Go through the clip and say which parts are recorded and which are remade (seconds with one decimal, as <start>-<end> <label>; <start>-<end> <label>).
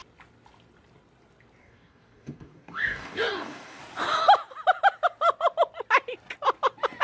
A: 0.0-1.6 recorded; 1.6-3.8 remade; 3.8-7.0 recorded